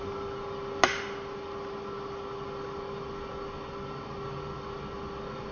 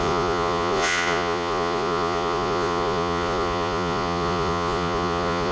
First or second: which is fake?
second